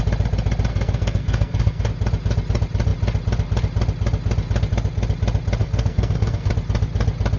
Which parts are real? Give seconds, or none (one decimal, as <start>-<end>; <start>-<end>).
0.0-0.7; 1.9-5.6; 6.5-7.4